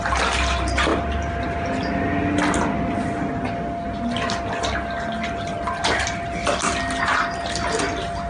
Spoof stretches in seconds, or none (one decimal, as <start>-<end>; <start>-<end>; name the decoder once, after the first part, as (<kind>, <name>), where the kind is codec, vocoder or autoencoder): none